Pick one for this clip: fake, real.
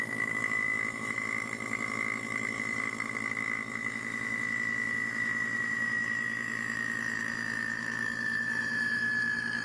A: fake